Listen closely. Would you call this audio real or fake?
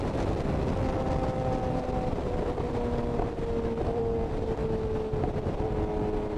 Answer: real